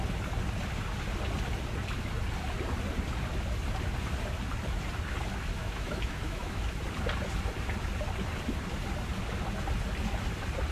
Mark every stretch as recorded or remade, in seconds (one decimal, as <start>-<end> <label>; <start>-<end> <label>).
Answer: 0.0-5.6 recorded; 5.6-6.8 remade; 6.8-10.7 recorded